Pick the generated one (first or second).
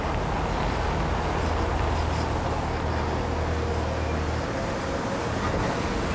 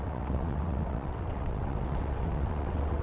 second